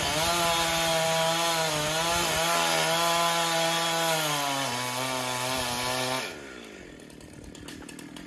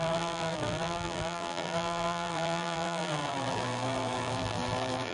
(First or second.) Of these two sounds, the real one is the first